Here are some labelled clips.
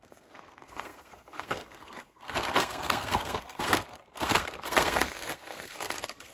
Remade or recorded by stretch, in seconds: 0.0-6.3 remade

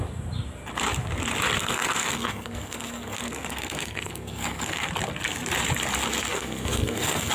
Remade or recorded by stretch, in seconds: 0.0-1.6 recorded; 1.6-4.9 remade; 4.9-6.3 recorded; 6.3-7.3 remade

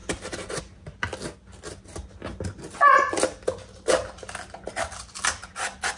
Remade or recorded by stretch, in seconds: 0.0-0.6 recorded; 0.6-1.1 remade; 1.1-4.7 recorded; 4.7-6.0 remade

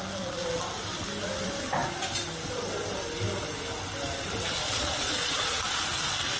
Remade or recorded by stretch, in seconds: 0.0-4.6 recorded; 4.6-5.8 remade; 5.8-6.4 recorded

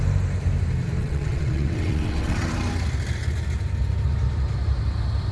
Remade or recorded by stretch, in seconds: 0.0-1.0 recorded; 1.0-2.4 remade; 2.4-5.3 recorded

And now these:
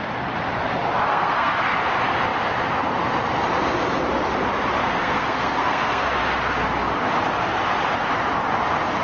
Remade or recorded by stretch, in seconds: 0.0-1.1 recorded; 1.1-1.6 remade; 1.6-4.8 recorded; 4.8-6.2 remade; 6.2-9.0 recorded

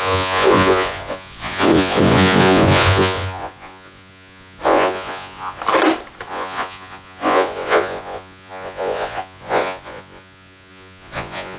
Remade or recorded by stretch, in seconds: 0.0-5.6 remade; 5.6-6.3 recorded; 6.3-11.6 remade

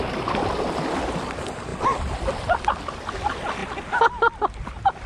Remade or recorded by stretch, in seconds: 0.0-5.1 recorded